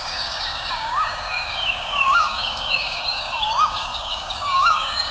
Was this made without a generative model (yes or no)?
no